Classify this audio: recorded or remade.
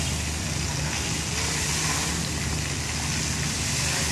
recorded